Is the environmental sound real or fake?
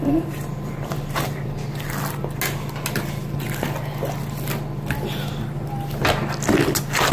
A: real